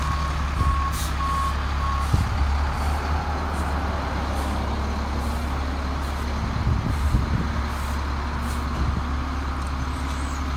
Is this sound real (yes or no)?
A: yes